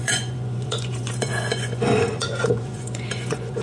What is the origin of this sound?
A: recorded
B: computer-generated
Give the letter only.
B